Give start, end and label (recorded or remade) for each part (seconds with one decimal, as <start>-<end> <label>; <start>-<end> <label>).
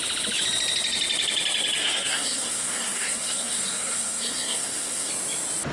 0.0-1.8 recorded; 1.8-5.1 remade; 5.1-5.7 recorded